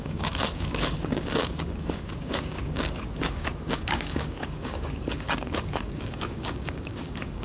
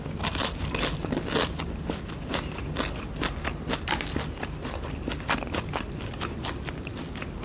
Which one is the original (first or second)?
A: second